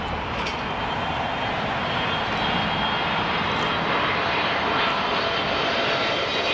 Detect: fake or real real